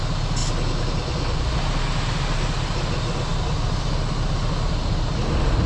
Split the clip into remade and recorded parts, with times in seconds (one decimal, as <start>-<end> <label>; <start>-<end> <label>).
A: 0.0-5.7 recorded